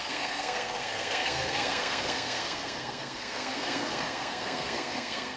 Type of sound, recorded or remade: remade